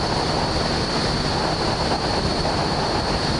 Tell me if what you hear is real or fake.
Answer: real